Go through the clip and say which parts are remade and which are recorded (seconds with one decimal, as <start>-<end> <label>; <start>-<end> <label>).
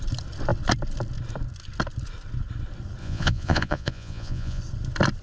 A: 0.0-3.0 recorded; 3.0-4.6 remade; 4.6-5.2 recorded